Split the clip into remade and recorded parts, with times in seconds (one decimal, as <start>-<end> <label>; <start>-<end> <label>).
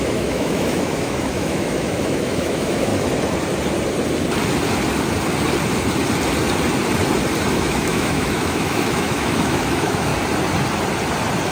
0.0-2.9 remade; 2.9-7.5 recorded; 7.5-10.1 remade; 10.1-11.5 recorded